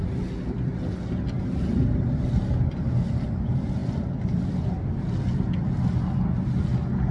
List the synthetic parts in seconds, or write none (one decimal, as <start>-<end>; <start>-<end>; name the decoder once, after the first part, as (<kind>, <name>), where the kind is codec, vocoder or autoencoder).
none